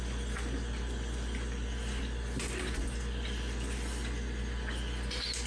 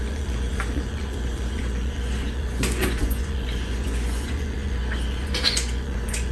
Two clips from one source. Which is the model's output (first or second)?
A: second